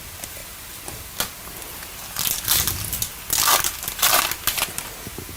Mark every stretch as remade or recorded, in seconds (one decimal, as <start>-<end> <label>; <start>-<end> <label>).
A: 0.0-5.4 recorded

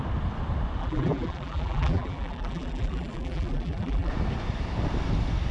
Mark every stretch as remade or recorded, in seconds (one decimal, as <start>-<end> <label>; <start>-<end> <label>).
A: 0.0-0.8 recorded; 0.8-4.1 remade; 4.1-5.5 recorded

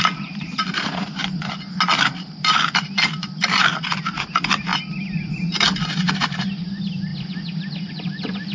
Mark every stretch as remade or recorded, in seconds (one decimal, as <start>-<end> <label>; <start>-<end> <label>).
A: 0.0-1.2 remade; 1.2-2.0 recorded; 2.0-4.7 remade; 4.7-6.1 recorded; 6.1-7.1 remade; 7.1-7.9 recorded; 7.9-8.5 remade

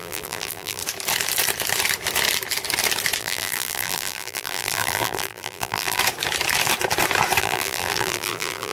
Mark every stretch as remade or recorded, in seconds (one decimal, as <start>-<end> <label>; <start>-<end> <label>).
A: 0.0-0.8 remade; 0.8-3.2 recorded; 3.2-6.0 remade; 6.0-7.4 recorded; 7.4-8.7 remade